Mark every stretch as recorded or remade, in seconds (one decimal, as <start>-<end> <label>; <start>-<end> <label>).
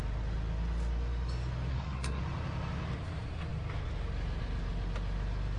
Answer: 0.0-1.7 recorded; 1.7-2.2 remade; 2.2-5.6 recorded